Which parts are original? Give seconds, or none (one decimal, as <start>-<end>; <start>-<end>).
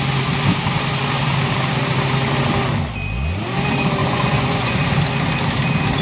0.0-4.0; 4.8-6.0